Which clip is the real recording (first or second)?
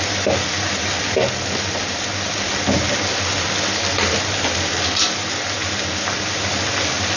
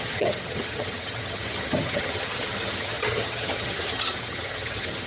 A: first